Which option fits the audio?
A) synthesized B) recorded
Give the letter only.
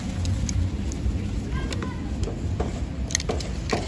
B